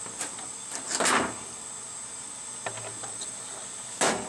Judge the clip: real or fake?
real